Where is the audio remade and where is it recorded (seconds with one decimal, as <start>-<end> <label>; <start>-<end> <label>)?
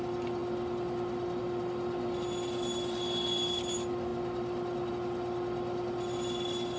0.0-6.8 recorded